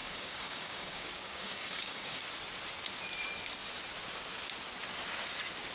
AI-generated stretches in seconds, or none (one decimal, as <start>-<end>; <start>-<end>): 0.0-2.2